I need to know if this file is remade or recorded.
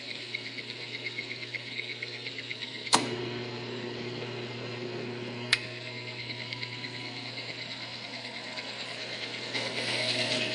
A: remade